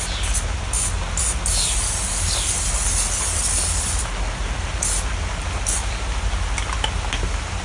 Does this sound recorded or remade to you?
recorded